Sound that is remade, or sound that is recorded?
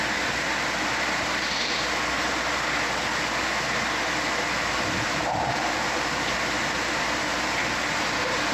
recorded